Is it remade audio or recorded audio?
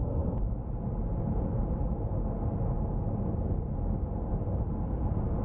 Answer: recorded